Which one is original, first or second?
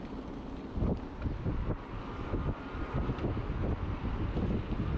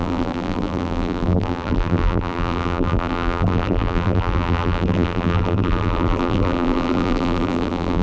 first